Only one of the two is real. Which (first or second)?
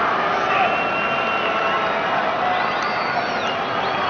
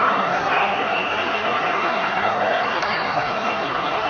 first